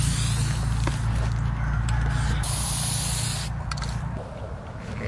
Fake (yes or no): no